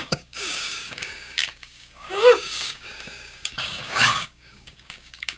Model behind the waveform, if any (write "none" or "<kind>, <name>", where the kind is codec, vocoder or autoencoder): codec, DAC